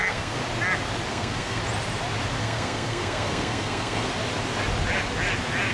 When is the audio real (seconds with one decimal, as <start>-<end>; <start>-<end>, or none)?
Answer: 0.4-1.1; 1.6-2.4; 4.1-5.7